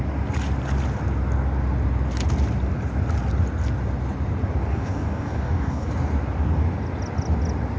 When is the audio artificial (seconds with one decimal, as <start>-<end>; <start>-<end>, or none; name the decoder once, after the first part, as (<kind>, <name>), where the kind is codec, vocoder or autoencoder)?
4.7-5.9 (codec, DAC)